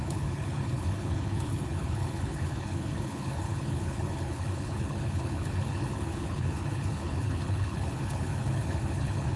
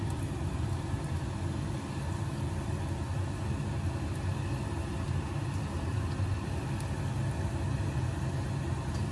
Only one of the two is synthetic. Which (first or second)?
first